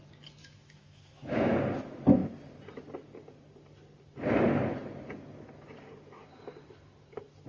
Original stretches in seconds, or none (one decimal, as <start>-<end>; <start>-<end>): 0.0-0.4; 1.6-7.5